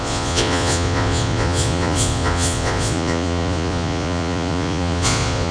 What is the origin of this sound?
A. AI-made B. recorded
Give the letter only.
A